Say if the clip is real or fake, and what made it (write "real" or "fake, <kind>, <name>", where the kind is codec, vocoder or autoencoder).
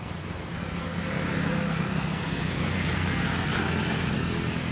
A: fake, codec, SNAC